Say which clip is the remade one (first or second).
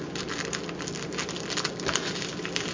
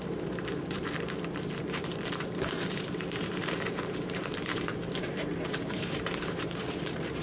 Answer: second